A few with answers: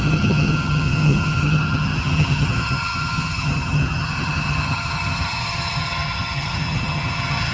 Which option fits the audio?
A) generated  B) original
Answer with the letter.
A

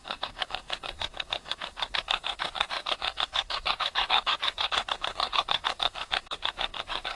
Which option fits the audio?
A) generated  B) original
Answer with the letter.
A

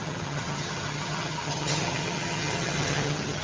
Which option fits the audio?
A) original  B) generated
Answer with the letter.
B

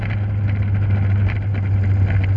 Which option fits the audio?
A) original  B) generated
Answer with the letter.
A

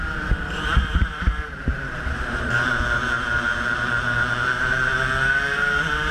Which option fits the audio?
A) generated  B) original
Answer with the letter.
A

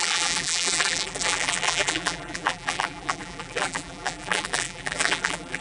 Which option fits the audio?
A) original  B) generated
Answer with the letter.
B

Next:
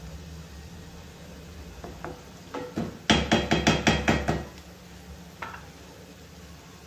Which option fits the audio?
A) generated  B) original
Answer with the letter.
B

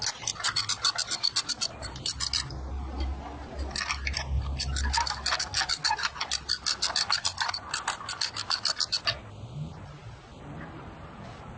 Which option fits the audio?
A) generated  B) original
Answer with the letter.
B